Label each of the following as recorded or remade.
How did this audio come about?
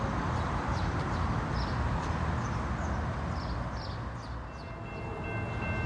recorded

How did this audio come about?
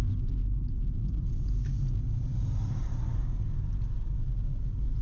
recorded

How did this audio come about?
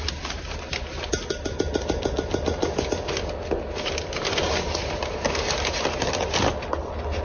recorded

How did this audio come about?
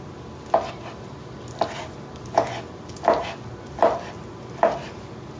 recorded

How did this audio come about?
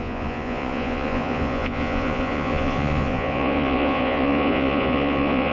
remade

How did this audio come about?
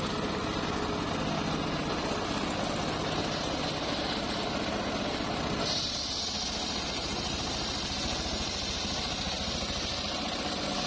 recorded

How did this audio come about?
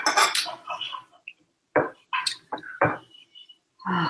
recorded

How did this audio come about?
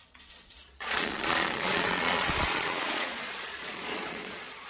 remade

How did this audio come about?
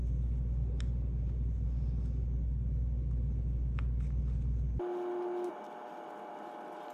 recorded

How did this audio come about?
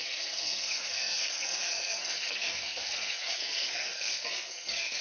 remade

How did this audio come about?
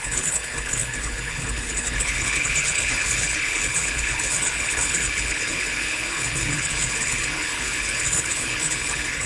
remade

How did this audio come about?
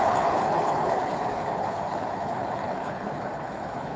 remade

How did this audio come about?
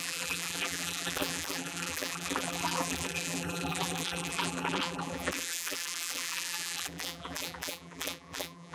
remade